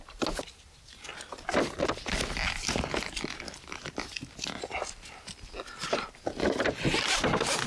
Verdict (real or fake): real